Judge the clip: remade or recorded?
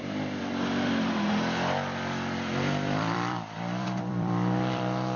remade